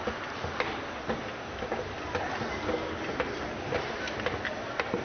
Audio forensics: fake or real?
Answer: real